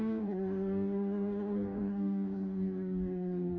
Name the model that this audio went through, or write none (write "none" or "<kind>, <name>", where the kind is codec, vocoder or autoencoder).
codec, DAC